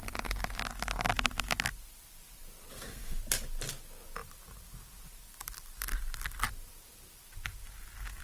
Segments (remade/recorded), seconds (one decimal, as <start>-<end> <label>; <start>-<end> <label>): 0.0-2.7 recorded; 2.7-3.2 remade; 3.2-8.2 recorded